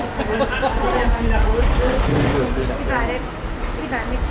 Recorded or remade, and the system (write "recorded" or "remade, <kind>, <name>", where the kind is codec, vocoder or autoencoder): recorded